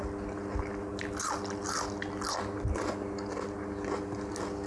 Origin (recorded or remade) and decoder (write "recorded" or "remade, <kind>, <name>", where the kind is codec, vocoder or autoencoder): recorded